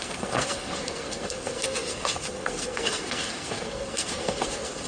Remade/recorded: remade